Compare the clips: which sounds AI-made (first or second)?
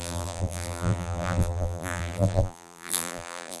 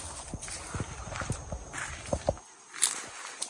first